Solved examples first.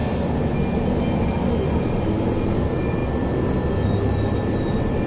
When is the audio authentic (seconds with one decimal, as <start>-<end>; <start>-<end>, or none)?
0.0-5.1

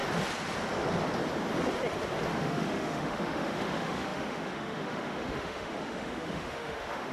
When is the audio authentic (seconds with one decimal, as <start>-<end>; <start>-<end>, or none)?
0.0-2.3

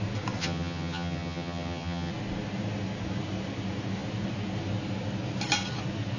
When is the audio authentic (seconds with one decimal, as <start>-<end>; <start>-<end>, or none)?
0.0-0.4; 2.1-6.2

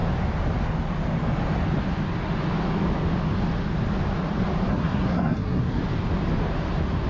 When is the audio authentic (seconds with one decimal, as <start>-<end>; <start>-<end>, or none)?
0.0-4.7; 5.8-7.1

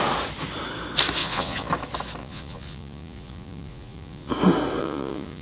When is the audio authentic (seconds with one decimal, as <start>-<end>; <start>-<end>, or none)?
0.0-1.2; 1.7-2.2; 4.3-4.8